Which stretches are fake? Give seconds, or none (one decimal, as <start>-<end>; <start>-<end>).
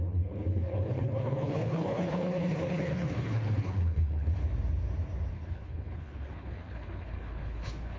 0.0-4.4; 5.3-8.0